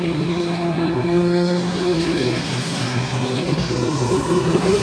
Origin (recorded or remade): remade